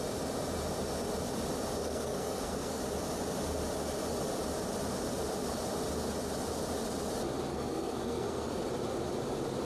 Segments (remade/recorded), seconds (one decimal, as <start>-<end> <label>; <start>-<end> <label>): 0.0-1.8 recorded; 1.8-2.8 remade; 2.8-7.5 recorded; 7.5-8.6 remade; 8.6-9.6 recorded